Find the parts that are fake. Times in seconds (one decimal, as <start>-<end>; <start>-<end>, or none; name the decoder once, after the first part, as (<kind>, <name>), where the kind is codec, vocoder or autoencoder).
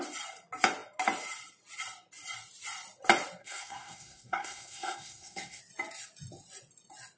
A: 3.4-5.6 (codec, SNAC)